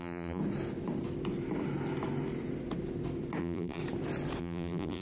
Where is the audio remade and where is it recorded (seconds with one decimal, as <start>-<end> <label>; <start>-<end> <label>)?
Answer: 0.0-0.4 remade; 0.4-3.4 recorded; 3.4-3.8 remade; 3.8-4.4 recorded; 4.4-5.0 remade